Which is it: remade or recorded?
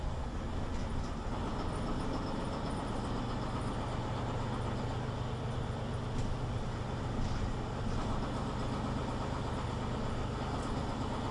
recorded